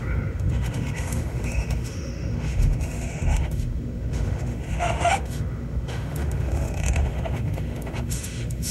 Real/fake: fake